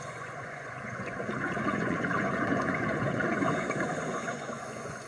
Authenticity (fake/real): fake